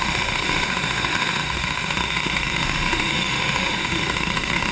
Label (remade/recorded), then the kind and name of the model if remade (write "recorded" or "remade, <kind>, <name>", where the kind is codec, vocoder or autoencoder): remade, autoencoder, DAC-VAE